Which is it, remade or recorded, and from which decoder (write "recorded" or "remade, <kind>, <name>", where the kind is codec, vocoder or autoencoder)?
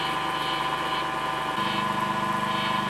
recorded